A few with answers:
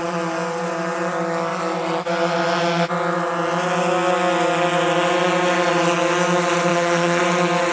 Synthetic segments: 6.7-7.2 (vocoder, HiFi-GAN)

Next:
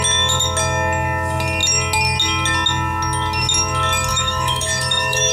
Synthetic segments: 4.1-5.3 (autoencoder, DAC-VAE)

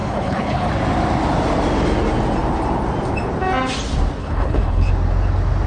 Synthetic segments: 0.0-0.7 (codec, HILCodec); 4.2-4.9

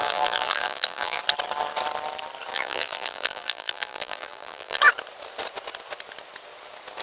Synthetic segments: 0.0-1.2 (vocoder, BigVGAN v2); 2.5-4.8

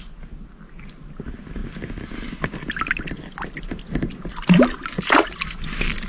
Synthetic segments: none

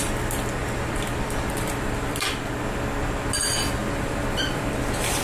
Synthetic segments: 0.6-2.5 (vocoder, BigVGAN v2); 3.8-5.2

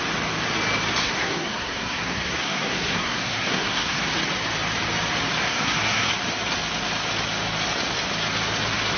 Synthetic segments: 1.0-4.0 (codec, SNAC); 5.4-6.1

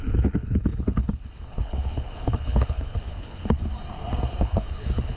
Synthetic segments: 0.0-3.7 (codec, HILCodec); 4.4-5.2